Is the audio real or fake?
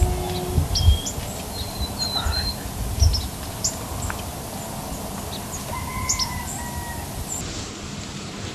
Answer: real